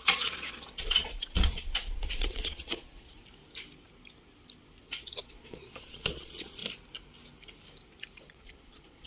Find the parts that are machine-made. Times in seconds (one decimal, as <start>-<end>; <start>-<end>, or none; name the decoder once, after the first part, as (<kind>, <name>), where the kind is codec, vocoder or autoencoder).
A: 0.0-3.2 (vocoder, Vocos); 4.8-6.6; 8.2-9.1